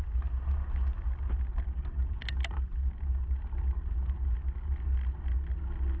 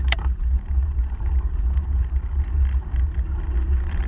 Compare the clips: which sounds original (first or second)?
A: first